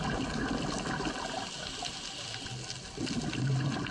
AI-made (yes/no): no